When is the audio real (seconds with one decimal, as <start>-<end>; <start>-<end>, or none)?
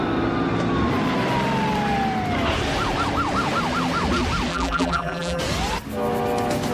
0.0-4.5; 5.4-6.7